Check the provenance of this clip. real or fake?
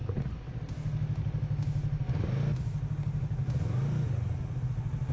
real